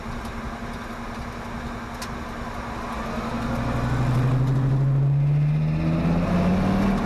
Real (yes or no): yes